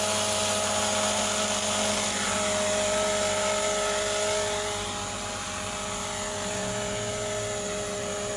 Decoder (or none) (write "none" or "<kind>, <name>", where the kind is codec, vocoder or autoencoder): none